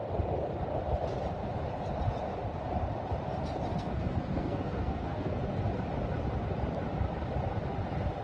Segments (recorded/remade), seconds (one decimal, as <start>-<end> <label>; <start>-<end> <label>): 0.0-3.7 recorded; 3.7-5.4 remade; 5.4-8.2 recorded